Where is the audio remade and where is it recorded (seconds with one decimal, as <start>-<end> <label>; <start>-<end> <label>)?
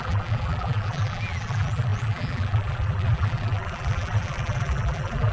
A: 0.0-5.3 remade